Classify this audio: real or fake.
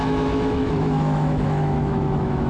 fake